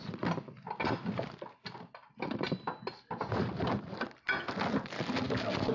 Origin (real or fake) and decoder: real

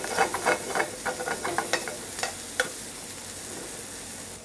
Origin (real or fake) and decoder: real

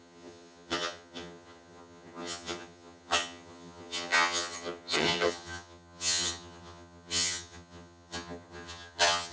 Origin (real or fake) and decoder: fake, vocoder, HiFi-GAN